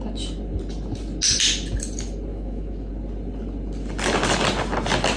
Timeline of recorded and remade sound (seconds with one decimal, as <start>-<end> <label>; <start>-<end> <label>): 0.0-2.3 recorded; 2.3-2.9 remade; 2.9-5.2 recorded